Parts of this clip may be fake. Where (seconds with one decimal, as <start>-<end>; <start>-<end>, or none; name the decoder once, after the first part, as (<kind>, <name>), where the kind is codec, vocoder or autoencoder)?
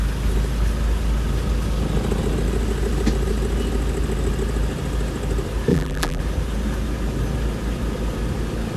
5.7-6.2 (vocoder, BigVGAN v2)